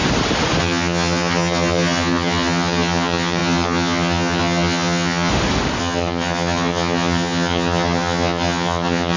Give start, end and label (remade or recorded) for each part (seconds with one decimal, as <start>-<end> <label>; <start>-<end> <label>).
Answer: 0.0-0.6 recorded; 0.6-5.3 remade; 5.3-5.8 recorded; 5.8-9.2 remade